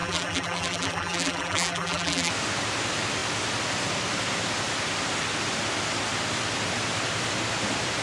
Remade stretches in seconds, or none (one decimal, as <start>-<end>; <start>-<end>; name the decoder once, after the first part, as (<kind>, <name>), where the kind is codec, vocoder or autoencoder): 0.0-2.3 (vocoder, BigVGAN v2)